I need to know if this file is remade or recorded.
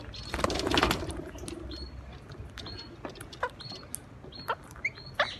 recorded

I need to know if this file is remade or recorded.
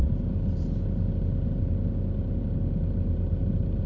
recorded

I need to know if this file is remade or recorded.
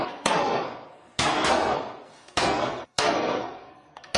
remade